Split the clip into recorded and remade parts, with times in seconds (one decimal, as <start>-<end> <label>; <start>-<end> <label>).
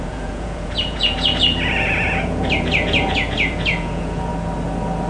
0.0-4.3 remade; 4.3-5.1 recorded